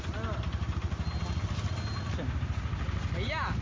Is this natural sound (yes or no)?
yes